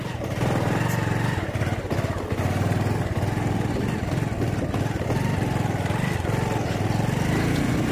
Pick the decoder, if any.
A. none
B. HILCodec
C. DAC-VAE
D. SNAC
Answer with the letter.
A